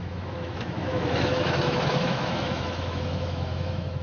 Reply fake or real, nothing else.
fake